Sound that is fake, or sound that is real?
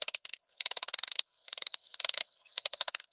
fake